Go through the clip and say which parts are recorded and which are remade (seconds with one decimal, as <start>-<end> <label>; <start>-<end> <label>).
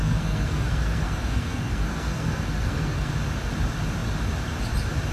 0.0-3.1 remade; 3.1-5.1 recorded